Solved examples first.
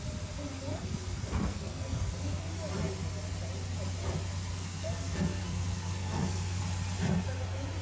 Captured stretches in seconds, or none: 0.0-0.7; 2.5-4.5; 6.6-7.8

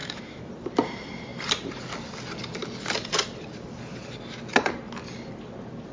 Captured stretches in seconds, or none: 0.5-5.9

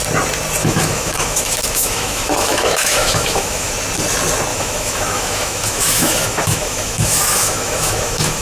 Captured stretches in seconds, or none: 0.0-0.6; 3.7-4.5

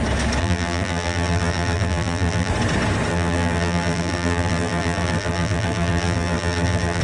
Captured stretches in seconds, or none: 0.0-0.4; 2.5-3.1

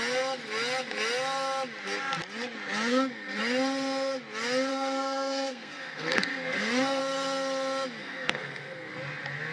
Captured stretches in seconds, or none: 0.0-2.9; 3.4-4.7; 7.0-8.0; 8.9-9.5

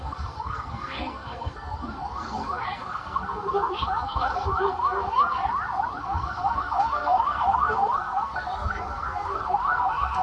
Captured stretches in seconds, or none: 5.4-6.0